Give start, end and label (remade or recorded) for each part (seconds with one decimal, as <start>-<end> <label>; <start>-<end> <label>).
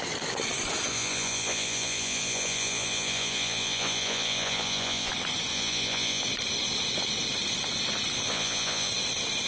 0.0-0.9 recorded; 0.9-5.1 remade; 5.1-5.5 recorded; 5.5-6.2 remade; 6.2-8.3 recorded; 8.3-8.9 remade; 8.9-9.5 recorded